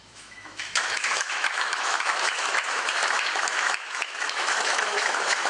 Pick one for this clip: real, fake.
fake